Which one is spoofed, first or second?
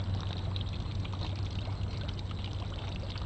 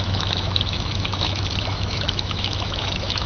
second